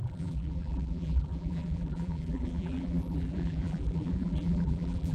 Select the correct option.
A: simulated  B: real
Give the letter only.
A